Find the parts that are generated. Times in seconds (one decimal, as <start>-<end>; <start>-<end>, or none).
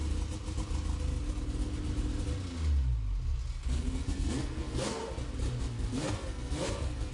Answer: 3.7-5.0; 5.6-7.1